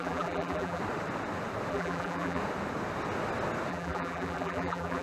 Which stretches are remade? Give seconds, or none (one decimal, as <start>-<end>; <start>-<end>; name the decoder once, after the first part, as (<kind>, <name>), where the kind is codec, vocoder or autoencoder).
0.0-0.8 (vocoder, BigVGAN v2); 1.7-2.4; 3.7-5.0